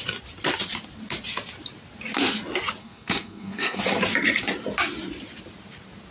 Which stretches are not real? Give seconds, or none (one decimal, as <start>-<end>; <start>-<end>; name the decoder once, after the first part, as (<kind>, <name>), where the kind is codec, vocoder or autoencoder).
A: 2.8-3.8 (codec, SNAC)